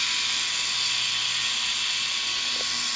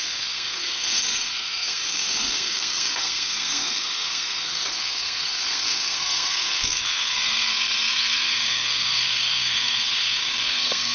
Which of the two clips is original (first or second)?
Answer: first